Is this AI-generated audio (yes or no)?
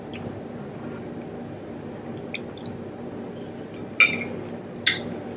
no